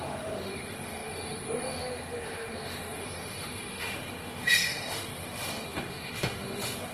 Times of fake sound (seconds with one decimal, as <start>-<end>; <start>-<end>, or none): 0.0-6.9